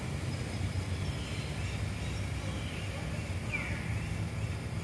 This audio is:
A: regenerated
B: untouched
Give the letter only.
B